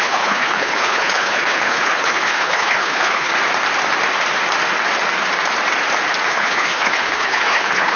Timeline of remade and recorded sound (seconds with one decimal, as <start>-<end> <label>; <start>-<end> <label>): 0.0-3.3 remade; 3.3-6.3 recorded; 6.3-8.0 remade

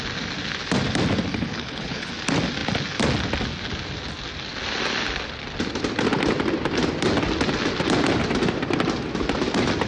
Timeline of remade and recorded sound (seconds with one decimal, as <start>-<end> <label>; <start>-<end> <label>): 0.0-1.3 recorded; 1.3-2.1 remade; 2.1-9.9 recorded

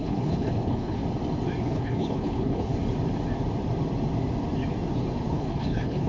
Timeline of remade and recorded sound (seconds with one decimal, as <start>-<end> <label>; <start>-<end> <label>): 0.0-1.0 remade; 1.0-1.6 recorded; 1.6-2.7 remade; 2.7-5.3 recorded; 5.3-6.1 remade

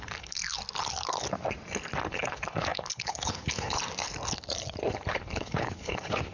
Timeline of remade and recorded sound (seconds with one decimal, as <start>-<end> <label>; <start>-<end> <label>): 0.0-0.4 remade; 0.4-2.1 recorded; 2.1-3.8 remade; 3.8-4.9 recorded; 4.9-6.3 remade

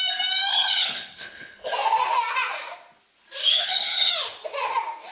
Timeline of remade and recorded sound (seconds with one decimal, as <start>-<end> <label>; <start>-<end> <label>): 0.0-0.5 recorded; 0.5-1.7 remade; 1.7-3.4 recorded; 3.4-4.1 remade; 4.1-5.1 recorded

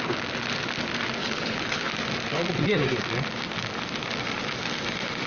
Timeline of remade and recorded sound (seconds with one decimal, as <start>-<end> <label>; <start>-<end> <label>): 0.0-1.2 recorded; 1.2-1.9 remade; 1.9-5.3 recorded